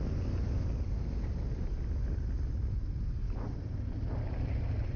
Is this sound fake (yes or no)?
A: no